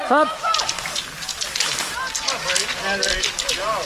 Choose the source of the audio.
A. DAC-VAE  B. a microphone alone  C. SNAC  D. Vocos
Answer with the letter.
B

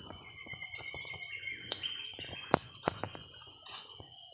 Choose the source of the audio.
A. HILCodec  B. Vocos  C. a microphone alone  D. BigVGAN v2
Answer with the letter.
B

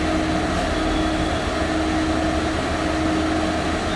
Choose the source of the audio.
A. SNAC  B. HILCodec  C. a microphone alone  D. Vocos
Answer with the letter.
C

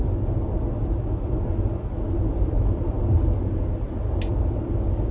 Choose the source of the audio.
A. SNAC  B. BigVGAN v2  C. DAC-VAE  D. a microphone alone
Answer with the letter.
D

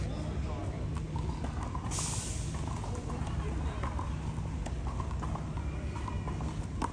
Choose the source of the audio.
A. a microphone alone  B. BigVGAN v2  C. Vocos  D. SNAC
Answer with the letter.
A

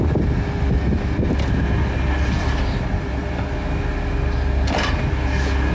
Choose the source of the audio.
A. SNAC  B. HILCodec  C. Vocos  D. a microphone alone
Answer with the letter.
D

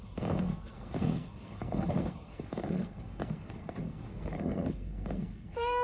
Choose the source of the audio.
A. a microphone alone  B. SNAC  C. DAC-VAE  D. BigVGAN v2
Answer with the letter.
B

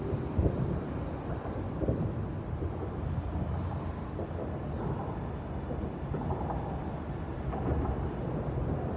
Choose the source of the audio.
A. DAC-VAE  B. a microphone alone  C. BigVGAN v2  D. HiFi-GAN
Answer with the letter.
B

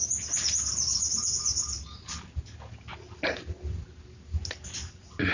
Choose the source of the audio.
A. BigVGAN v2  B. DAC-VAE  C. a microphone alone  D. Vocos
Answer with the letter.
C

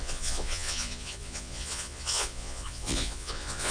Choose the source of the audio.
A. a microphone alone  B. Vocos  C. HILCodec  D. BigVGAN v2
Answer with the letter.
B